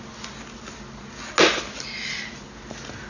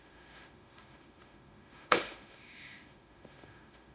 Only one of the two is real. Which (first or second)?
first